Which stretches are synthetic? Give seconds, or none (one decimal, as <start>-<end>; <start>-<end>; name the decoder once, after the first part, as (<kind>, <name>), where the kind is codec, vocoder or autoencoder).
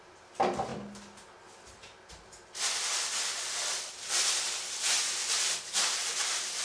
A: 0.0-0.7 (vocoder, BigVGAN v2); 3.9-6.6